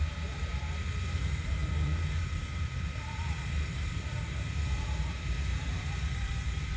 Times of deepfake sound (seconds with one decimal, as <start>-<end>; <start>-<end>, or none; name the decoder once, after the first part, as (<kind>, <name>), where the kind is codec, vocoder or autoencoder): 0.0-6.8 (vocoder, BigVGAN v2)